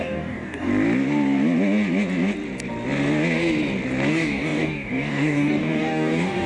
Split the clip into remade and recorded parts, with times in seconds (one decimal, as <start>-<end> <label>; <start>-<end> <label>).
0.0-0.7 remade; 0.7-4.1 recorded; 4.1-6.5 remade